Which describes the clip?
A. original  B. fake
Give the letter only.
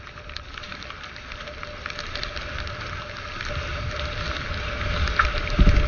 A